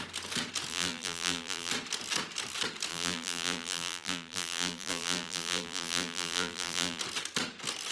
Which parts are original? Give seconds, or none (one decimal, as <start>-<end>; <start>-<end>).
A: 0.0-0.7; 1.7-2.9; 7.0-7.9